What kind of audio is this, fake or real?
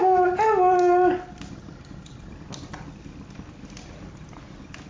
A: real